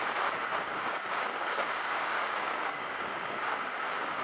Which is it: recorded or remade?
remade